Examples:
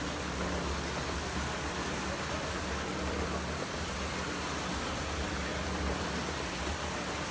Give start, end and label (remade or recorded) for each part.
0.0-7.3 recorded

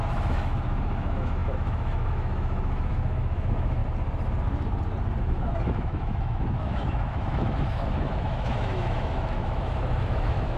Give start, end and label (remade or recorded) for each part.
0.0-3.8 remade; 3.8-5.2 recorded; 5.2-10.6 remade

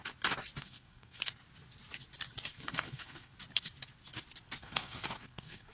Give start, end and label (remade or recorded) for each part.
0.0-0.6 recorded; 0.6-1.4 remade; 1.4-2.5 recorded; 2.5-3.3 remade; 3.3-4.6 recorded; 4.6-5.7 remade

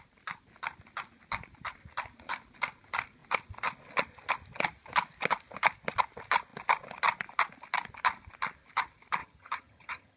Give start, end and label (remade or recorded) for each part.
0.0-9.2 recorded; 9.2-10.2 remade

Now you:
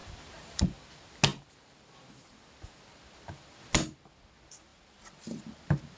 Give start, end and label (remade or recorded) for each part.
0.0-0.6 remade; 0.6-4.7 recorded; 4.7-5.4 remade; 5.4-6.0 recorded

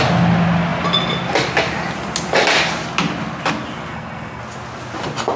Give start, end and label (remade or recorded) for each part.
0.0-3.9 recorded; 3.9-4.4 remade; 4.4-5.4 recorded

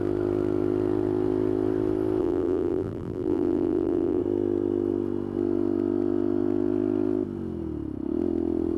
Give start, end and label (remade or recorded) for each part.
0.0-2.2 recorded; 2.2-4.2 remade; 4.2-8.8 recorded

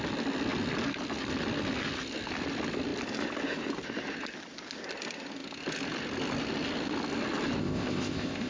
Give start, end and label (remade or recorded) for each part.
0.0-7.6 recorded; 7.6-8.5 remade